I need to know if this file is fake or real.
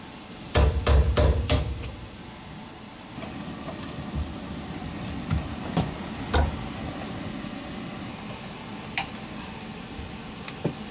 real